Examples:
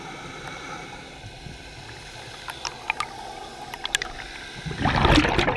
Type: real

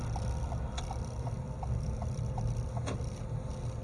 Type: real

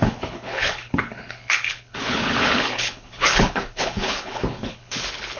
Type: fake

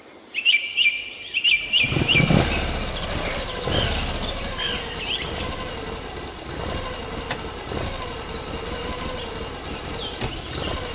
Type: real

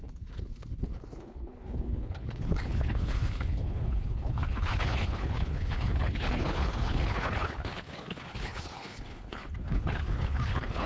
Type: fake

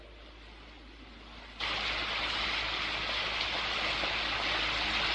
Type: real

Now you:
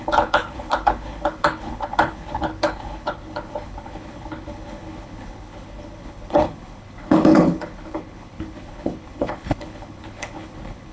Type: fake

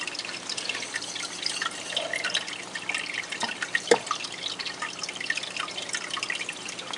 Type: real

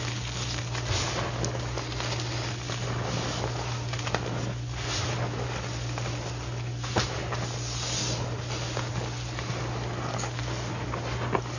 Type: real